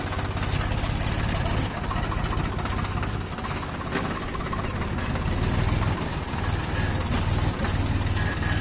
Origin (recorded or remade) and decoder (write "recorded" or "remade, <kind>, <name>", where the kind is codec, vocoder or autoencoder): recorded